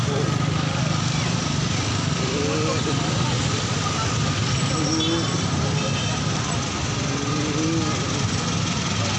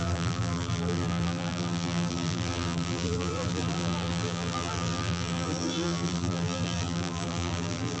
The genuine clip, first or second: first